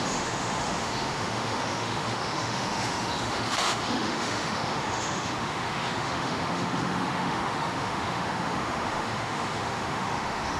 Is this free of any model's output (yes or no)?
no